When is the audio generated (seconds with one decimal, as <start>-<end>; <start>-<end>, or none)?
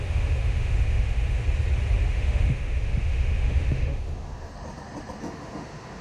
0.0-1.4; 2.0-4.5; 5.2-6.0